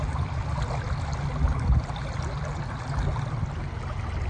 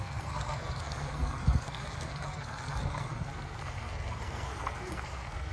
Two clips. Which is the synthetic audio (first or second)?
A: second